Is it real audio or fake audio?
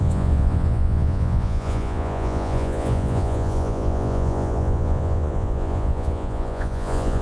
fake